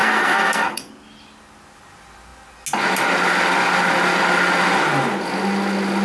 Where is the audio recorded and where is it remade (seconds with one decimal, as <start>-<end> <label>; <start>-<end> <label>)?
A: 0.0-0.9 remade; 0.9-6.0 recorded